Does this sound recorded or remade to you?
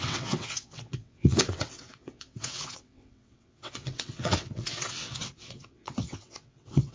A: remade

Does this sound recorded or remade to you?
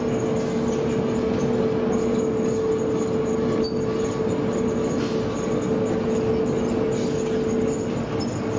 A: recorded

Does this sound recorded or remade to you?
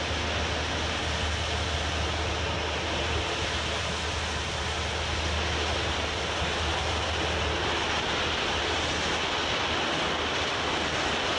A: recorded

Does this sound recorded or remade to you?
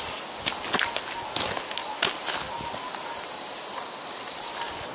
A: recorded